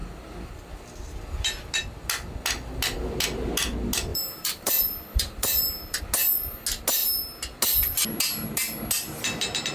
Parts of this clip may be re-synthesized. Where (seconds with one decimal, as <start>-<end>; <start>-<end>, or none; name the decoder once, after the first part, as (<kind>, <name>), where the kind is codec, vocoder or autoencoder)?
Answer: 0.0-0.7 (vocoder, BigVGAN v2); 4.1-6.0